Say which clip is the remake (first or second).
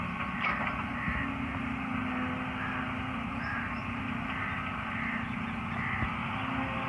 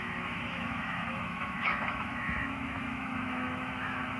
second